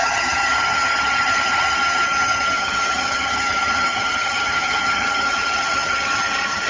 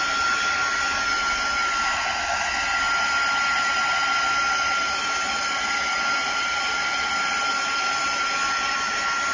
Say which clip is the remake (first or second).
first